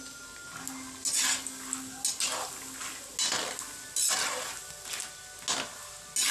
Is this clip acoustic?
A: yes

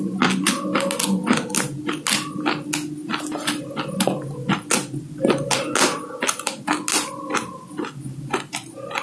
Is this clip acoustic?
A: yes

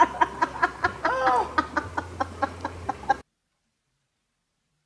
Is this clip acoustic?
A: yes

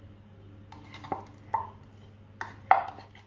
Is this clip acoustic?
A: yes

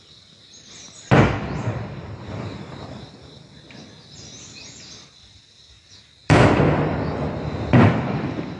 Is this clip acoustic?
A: yes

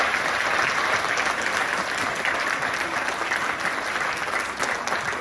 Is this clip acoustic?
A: yes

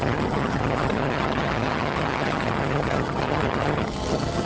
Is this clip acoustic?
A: no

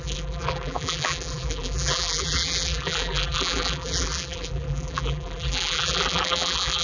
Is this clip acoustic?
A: no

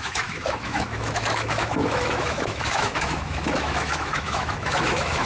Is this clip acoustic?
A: no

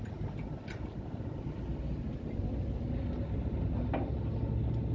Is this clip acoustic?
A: yes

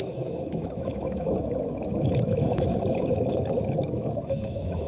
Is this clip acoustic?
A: no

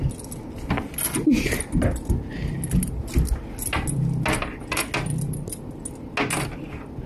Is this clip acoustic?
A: yes